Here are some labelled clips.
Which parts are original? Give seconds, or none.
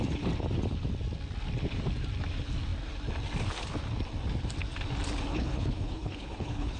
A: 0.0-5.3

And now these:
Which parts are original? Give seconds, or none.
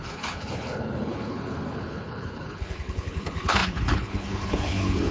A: none